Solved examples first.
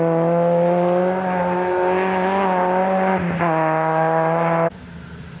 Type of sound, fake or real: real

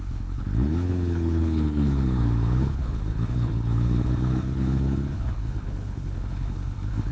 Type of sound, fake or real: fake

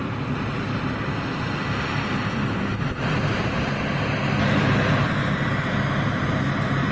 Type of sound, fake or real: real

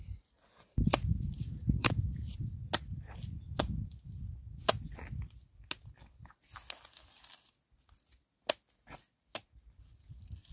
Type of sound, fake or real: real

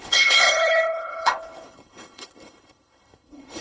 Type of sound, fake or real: fake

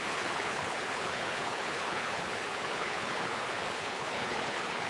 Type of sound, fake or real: fake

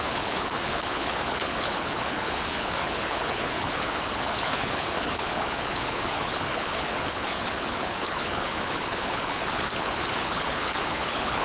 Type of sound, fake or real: fake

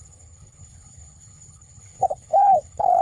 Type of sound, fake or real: fake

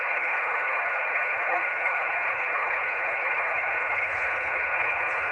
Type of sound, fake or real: fake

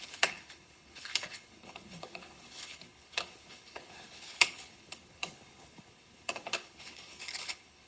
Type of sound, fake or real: fake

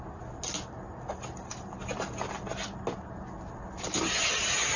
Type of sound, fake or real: real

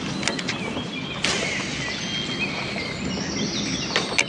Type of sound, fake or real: real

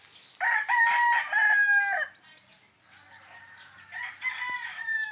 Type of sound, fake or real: real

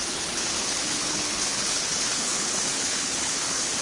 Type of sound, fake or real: fake